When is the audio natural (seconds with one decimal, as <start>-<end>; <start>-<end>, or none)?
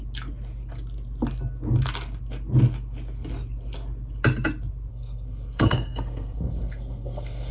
0.0-4.9